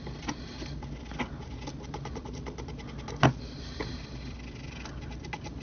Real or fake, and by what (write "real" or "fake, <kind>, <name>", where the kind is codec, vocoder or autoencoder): real